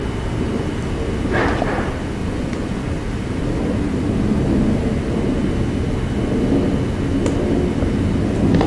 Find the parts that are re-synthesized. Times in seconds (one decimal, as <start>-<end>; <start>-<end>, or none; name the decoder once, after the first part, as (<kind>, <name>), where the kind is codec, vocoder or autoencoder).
2.2-2.8 (vocoder, Vocos)